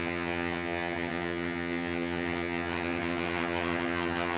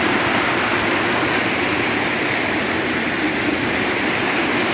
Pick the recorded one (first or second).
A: second